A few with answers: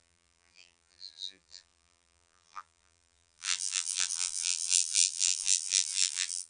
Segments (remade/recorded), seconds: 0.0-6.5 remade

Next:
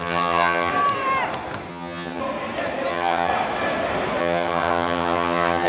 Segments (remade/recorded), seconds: 0.0-0.7 remade; 0.7-1.7 recorded; 1.7-2.2 remade; 2.2-2.9 recorded; 2.9-3.3 remade; 3.3-4.2 recorded; 4.2-5.7 remade

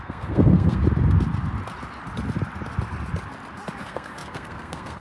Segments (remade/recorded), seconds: 0.0-0.8 remade; 0.8-3.8 recorded; 3.8-5.0 remade

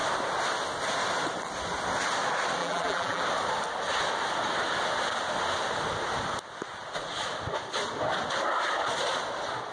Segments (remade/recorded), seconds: 0.0-2.6 recorded; 2.6-3.2 remade; 3.2-9.7 recorded

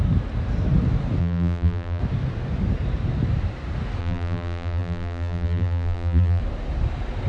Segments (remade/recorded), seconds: 0.0-1.2 recorded; 1.2-2.0 remade; 2.0-4.0 recorded; 4.0-6.4 remade; 6.4-7.3 recorded